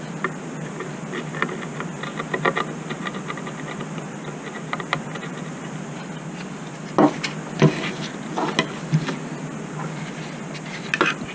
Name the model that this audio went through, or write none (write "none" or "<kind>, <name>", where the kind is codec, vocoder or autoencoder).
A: none